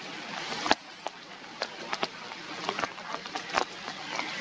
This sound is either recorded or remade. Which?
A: recorded